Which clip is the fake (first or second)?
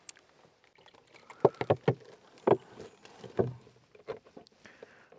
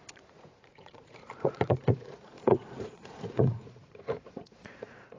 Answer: second